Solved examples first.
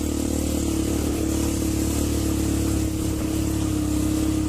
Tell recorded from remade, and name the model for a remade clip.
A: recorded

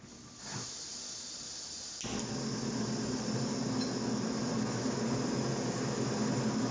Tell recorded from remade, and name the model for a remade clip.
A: recorded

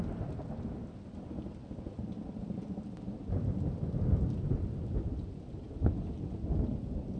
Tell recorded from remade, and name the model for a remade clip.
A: recorded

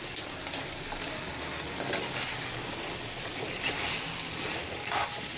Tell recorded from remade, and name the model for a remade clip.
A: recorded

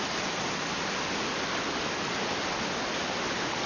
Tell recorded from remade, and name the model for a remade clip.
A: recorded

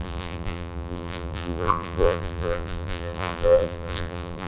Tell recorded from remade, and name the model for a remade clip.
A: remade, vocoder, BigVGAN v2